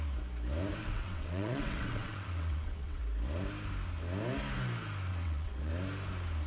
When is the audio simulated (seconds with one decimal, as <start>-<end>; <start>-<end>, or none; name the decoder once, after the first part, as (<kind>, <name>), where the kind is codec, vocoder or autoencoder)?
0.8-3.0 (vocoder, WaveNeXt); 5.1-5.7